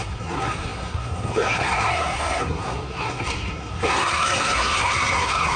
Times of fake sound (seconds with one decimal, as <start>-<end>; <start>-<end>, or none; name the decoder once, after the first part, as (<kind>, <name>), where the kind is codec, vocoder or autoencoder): 0.0-5.6 (codec, SNAC)